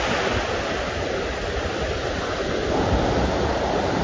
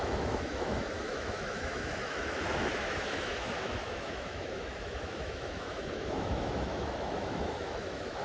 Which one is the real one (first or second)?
first